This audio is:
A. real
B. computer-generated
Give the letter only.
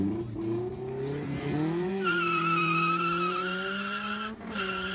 B